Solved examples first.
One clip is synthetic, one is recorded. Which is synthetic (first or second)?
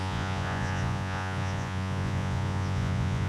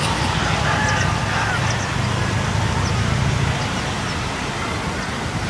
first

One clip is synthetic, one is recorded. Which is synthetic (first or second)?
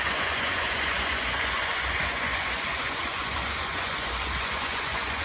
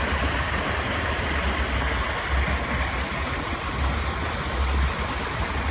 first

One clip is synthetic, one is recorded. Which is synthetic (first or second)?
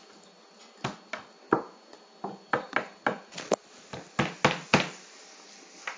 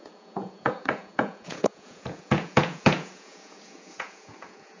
second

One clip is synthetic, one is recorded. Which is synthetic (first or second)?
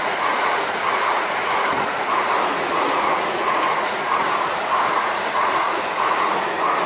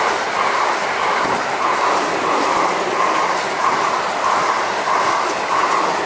first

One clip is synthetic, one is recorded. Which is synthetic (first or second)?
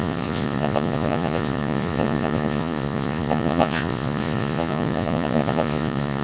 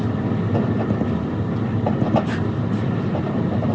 first